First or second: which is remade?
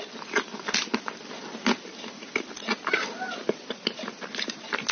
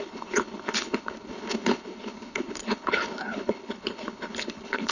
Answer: second